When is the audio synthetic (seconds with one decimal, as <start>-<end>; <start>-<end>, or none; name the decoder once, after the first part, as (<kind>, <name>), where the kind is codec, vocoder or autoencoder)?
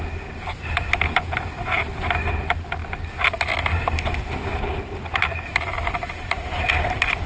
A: 5.7-6.7 (vocoder, BigVGAN v2)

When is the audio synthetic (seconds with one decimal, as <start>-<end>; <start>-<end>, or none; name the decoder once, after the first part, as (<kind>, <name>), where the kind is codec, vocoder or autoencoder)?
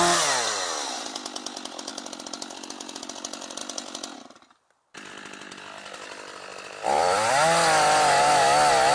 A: 6.5-7.3 (vocoder, BigVGAN v2)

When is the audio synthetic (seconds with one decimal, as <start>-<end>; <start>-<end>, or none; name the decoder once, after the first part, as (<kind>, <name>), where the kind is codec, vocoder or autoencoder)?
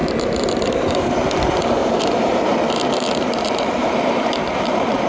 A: 0.0-1.1 (vocoder, BigVGAN v2); 1.8-5.1